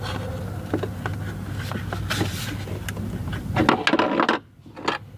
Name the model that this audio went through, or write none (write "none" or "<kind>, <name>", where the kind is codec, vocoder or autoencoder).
none